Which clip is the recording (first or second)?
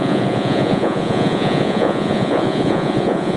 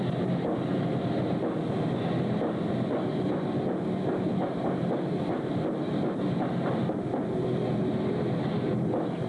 second